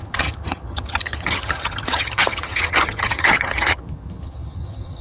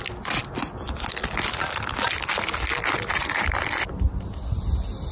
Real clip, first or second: second